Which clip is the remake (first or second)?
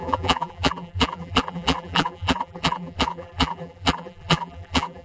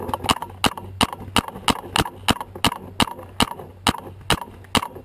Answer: first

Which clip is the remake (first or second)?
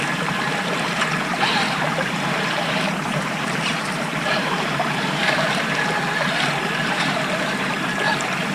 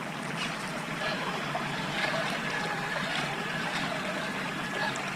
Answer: first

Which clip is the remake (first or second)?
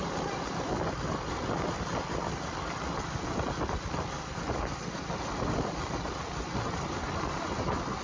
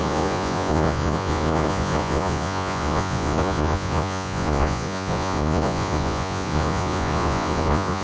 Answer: second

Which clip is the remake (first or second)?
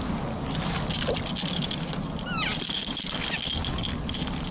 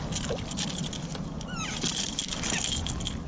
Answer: second